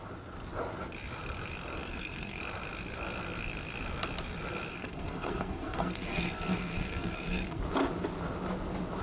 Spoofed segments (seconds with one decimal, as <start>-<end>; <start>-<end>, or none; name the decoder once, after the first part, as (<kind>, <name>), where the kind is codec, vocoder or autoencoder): 1.8-2.4 (codec, SNAC); 4.7-7.6